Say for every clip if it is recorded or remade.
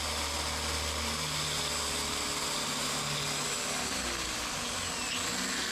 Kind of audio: recorded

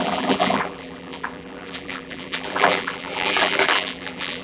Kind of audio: remade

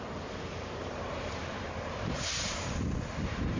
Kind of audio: remade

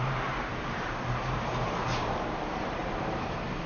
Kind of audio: remade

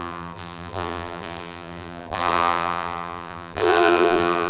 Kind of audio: remade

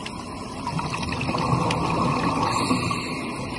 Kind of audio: recorded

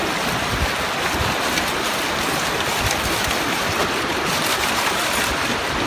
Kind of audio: remade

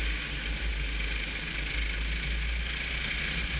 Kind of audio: recorded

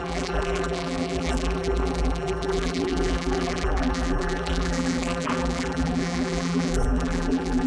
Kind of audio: remade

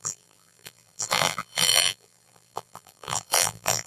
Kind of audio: remade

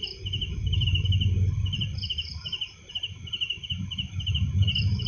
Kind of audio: remade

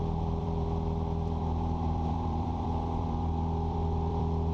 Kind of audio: remade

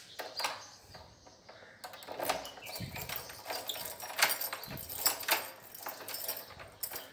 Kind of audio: recorded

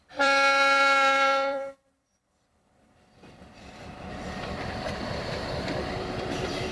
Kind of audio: remade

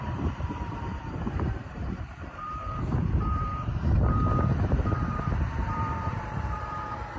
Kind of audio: remade